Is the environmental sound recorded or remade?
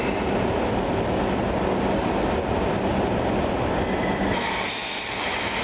recorded